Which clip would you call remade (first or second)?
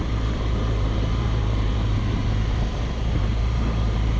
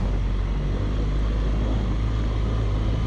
first